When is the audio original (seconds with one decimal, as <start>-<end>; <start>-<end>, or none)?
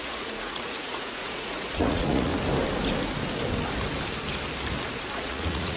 2.3-5.2